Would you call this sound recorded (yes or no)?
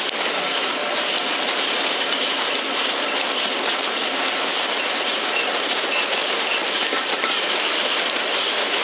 yes